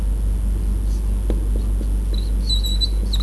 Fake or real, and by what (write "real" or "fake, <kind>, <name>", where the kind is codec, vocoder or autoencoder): real